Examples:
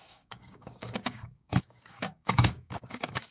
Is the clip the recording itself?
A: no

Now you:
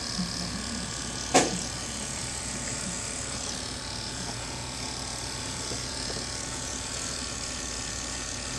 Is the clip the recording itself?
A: no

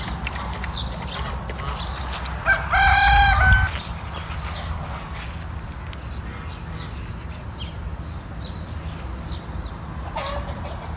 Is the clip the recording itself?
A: yes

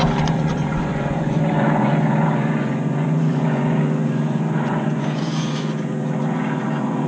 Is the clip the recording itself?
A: no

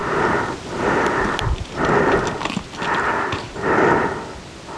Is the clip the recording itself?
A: yes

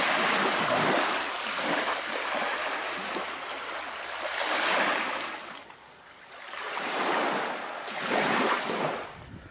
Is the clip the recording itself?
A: yes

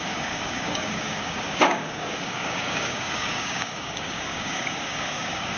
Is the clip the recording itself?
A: no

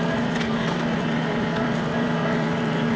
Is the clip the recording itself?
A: no